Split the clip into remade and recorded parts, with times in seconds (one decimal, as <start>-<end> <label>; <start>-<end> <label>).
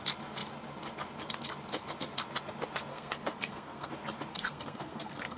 0.0-2.9 recorded; 2.9-3.9 remade; 3.9-4.3 recorded; 4.3-5.4 remade